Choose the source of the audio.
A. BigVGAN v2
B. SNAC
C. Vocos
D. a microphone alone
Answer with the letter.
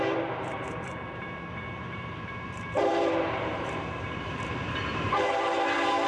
A